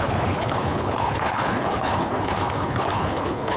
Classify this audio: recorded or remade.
remade